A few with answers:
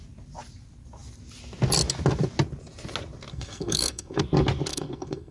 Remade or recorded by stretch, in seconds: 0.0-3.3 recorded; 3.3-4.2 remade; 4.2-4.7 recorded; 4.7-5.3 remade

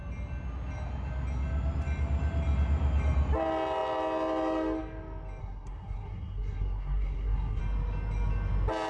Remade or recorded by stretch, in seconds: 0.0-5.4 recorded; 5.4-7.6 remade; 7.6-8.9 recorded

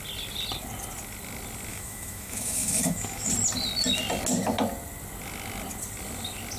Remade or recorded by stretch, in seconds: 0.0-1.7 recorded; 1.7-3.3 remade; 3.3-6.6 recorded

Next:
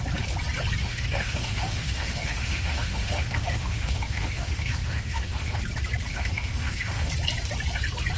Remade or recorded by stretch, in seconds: 0.0-0.8 recorded; 0.8-5.6 remade; 5.6-6.1 recorded; 6.1-7.1 remade; 7.1-8.2 recorded

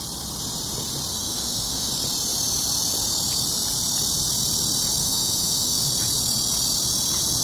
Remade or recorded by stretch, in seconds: 0.0-1.1 recorded; 1.1-1.9 remade; 1.9-5.0 recorded; 5.0-5.9 remade; 5.9-7.4 recorded